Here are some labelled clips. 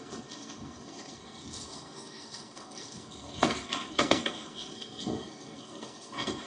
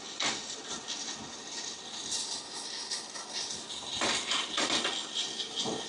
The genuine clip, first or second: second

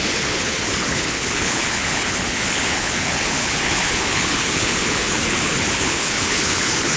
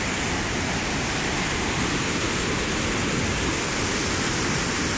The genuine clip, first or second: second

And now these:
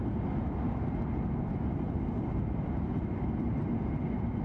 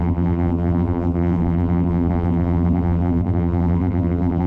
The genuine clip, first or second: first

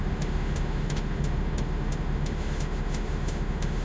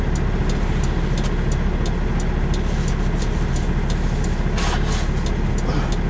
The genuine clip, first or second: second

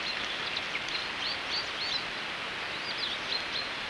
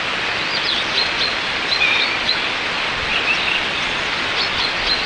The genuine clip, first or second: first